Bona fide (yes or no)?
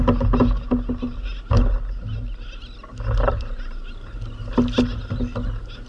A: yes